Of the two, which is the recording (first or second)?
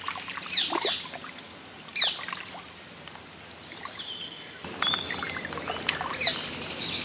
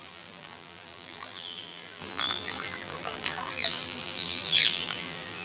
first